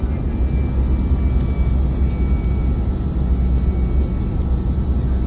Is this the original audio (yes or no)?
yes